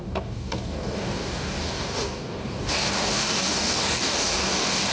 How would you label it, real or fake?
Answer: fake